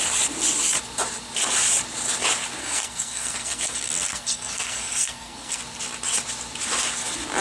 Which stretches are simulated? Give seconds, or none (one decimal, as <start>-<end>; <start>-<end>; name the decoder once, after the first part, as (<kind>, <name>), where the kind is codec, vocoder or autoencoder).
2.6-5.6 (codec, SNAC)